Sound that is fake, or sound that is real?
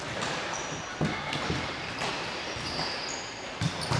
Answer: real